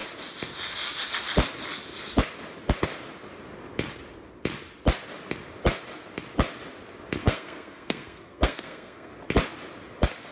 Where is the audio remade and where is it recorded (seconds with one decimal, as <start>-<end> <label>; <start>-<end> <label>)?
0.0-7.2 recorded; 7.2-9.1 remade; 9.1-10.3 recorded